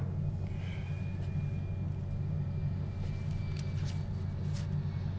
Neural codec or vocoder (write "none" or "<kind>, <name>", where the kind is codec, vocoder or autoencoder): none